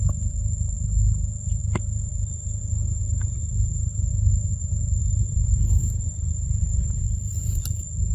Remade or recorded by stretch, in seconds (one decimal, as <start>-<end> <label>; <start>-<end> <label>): 0.0-1.6 recorded; 1.6-2.6 remade; 2.6-3.0 recorded; 3.0-4.3 remade; 4.3-5.0 recorded; 5.0-7.6 remade; 7.6-8.1 recorded